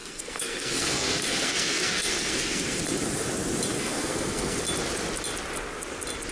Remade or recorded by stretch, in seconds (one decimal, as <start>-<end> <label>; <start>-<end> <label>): 0.0-2.8 remade; 2.8-3.8 recorded; 3.8-4.6 remade; 4.6-6.3 recorded